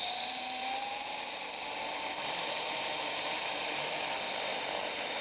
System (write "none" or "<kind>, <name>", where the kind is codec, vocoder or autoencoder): vocoder, BigVGAN v2